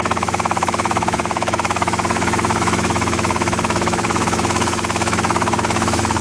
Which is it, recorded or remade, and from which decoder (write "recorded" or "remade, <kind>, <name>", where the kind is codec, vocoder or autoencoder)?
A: remade, autoencoder, DAC-VAE